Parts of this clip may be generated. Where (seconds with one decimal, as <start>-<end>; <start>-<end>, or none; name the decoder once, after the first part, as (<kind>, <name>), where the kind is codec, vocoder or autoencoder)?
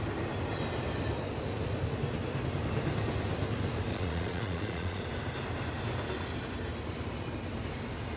3.9-5.0 (vocoder, Vocos)